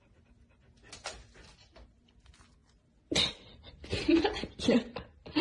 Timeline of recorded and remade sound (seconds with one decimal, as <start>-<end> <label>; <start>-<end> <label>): 0.0-5.4 recorded